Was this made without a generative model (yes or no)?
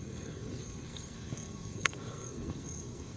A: no